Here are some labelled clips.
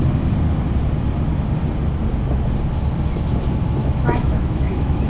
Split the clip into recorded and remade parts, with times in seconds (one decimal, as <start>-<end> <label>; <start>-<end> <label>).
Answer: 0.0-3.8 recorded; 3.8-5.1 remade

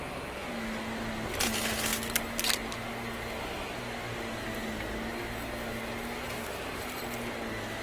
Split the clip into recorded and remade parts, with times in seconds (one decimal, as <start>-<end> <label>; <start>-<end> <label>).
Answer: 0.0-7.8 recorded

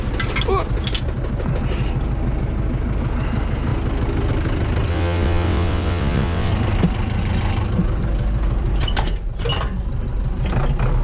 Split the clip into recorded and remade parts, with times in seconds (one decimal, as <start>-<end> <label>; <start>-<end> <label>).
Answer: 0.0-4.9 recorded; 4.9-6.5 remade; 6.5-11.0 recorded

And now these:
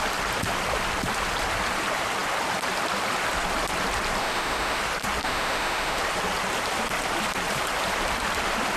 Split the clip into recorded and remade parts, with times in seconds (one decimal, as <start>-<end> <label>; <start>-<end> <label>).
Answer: 0.0-4.2 recorded; 4.2-4.8 remade; 4.8-5.2 recorded; 5.2-6.0 remade; 6.0-8.8 recorded

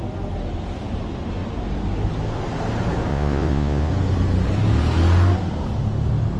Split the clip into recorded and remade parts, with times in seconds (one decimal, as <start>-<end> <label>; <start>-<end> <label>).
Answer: 0.0-3.1 recorded; 3.1-3.9 remade; 3.9-6.4 recorded